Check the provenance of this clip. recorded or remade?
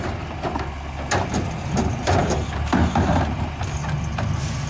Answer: recorded